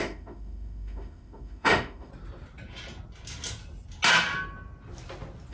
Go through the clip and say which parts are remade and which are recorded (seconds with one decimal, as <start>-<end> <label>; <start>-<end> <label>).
0.0-2.1 remade; 2.1-5.5 recorded